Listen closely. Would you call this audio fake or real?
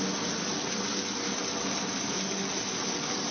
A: real